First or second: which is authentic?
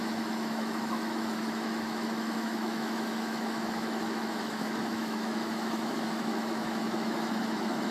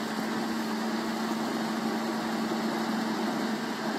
second